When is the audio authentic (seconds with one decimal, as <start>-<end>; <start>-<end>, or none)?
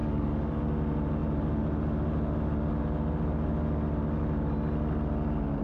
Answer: 0.6-5.6